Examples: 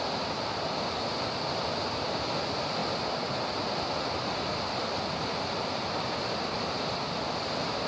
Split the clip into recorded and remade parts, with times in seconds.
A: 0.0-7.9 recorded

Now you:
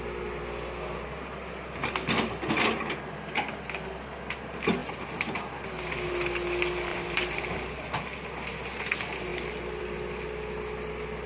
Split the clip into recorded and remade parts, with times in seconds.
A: 0.0-6.9 recorded; 6.9-8.0 remade; 8.0-11.3 recorded

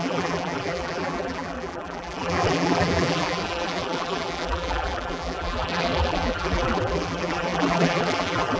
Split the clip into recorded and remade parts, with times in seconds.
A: 0.0-8.6 remade

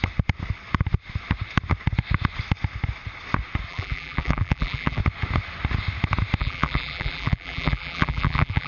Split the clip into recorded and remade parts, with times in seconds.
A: 0.0-3.7 recorded; 3.7-5.0 remade; 5.0-6.4 recorded; 6.4-8.7 remade

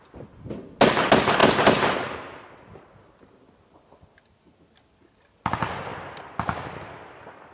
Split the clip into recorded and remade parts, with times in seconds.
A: 0.0-7.5 recorded

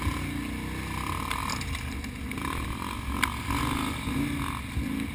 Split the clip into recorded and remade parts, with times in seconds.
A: 0.0-5.1 recorded

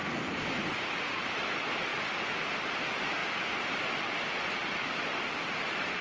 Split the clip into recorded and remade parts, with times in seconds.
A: 0.0-1.9 recorded; 1.9-2.6 remade; 2.6-4.8 recorded; 4.8-6.0 remade

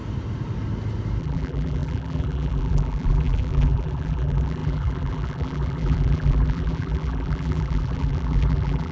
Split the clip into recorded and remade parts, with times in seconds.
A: 0.0-1.2 recorded; 1.2-8.9 remade